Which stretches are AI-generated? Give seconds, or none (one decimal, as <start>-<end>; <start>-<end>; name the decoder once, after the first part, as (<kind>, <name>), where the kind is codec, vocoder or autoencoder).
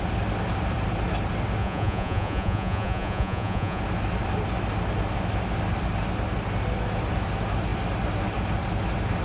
1.6-3.8 (vocoder, Vocos)